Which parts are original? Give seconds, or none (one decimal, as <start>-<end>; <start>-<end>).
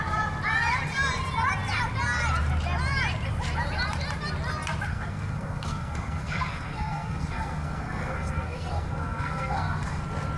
0.0-4.9; 10.0-10.4